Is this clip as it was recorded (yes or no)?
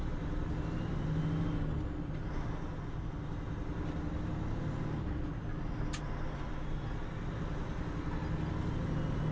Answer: yes